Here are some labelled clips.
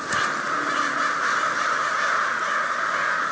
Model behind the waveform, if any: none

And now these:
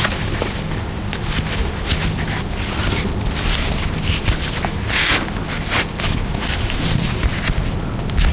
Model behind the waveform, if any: none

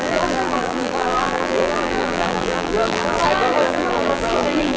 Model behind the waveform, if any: vocoder, BigVGAN v2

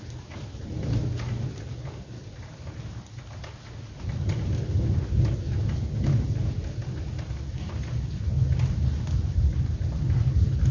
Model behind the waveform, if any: none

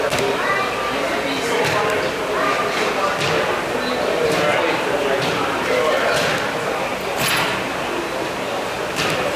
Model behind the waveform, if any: none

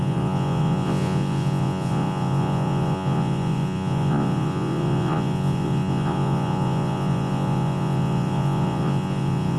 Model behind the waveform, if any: vocoder, Vocos